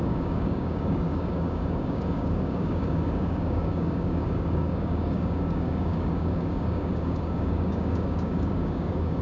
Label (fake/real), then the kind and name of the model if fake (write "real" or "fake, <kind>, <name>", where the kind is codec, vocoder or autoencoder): fake, codec, DAC